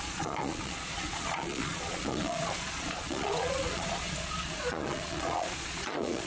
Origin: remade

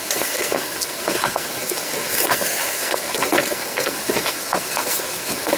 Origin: remade